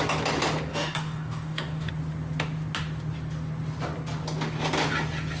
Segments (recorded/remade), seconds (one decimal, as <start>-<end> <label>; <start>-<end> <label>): 0.0-0.7 recorded; 0.7-1.9 remade; 1.9-5.4 recorded